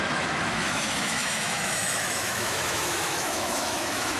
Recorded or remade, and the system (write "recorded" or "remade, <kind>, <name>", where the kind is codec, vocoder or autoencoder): remade, autoencoder, DAC-VAE